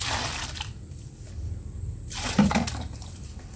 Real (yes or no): no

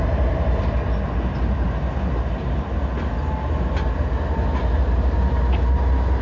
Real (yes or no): yes